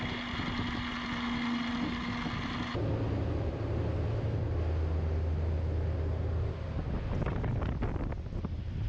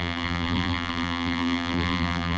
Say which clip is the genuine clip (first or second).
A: first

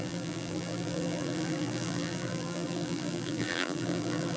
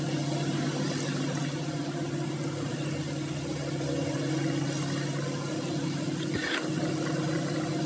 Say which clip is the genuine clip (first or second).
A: second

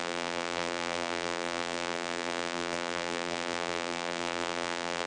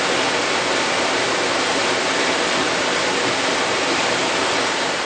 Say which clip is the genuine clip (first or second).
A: second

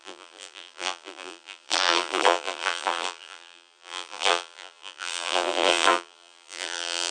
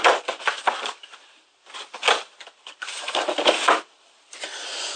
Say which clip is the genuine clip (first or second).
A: second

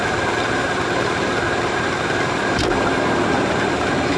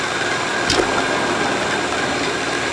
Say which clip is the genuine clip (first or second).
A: second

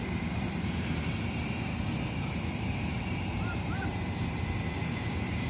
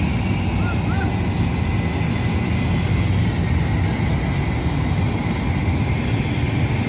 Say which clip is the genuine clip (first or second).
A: second